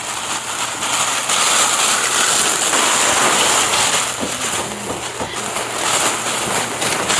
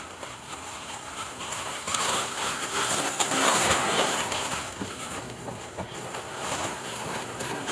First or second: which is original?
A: first